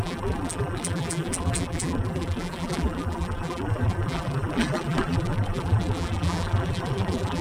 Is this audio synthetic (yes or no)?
yes